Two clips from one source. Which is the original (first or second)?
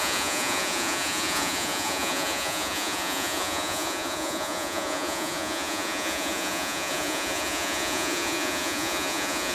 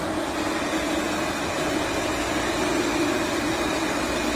second